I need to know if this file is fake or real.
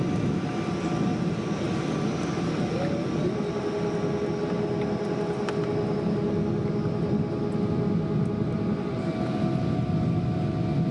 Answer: real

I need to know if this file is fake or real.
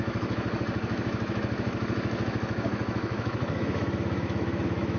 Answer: fake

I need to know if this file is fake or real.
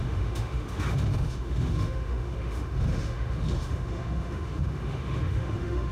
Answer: fake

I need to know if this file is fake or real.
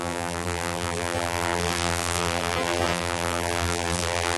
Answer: fake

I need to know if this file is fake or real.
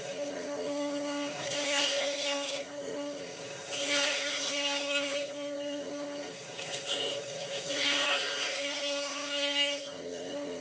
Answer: fake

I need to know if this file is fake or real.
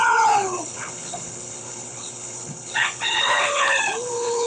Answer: fake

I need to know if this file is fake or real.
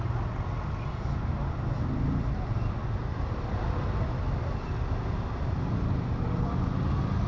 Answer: real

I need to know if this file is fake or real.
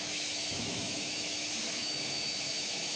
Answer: fake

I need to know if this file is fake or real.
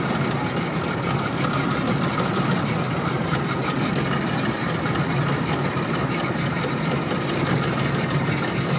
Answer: real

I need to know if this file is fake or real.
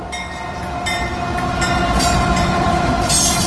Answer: real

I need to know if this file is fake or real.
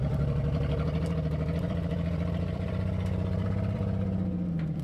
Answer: fake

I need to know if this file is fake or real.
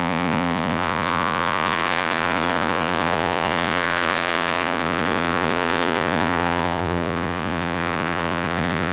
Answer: fake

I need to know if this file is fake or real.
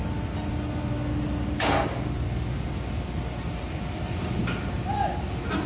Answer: real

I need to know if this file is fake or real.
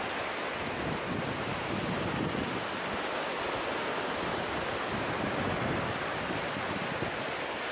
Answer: real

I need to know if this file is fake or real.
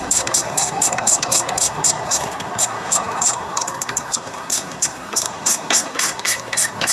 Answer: fake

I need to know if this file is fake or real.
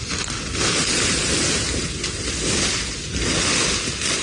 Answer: real